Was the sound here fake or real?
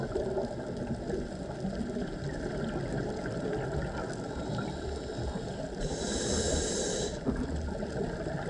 real